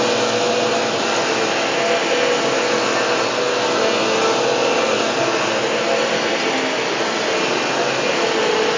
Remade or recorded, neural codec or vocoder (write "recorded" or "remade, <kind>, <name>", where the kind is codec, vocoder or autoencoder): recorded